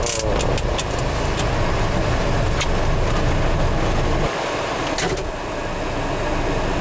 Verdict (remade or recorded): recorded